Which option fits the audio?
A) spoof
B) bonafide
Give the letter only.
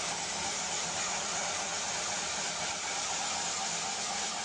B